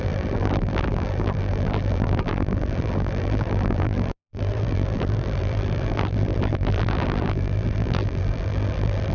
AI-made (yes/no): yes